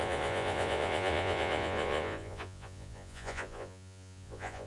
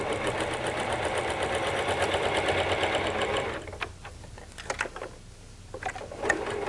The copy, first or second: first